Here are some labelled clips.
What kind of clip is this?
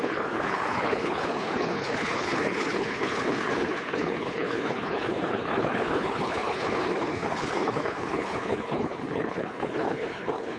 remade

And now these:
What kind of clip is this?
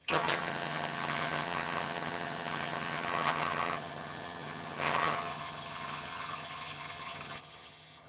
remade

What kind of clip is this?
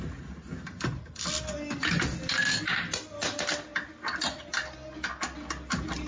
recorded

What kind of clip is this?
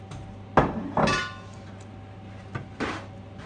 recorded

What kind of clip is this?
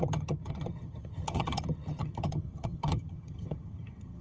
remade